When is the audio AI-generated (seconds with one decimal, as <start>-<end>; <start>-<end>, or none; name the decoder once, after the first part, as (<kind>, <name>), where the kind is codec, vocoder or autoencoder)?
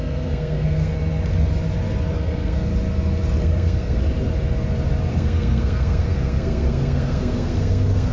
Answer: 0.0-0.9 (codec, SNAC); 2.1-2.7; 3.4-4.0; 5.1-8.1